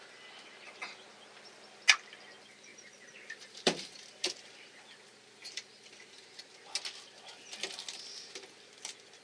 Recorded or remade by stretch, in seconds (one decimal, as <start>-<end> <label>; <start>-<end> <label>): 0.0-2.7 recorded; 2.7-4.4 remade; 4.4-5.4 recorded; 5.4-6.4 remade; 6.4-9.2 recorded